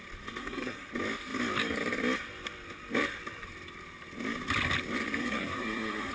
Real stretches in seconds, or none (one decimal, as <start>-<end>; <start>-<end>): 0.0-0.4; 0.9-5.2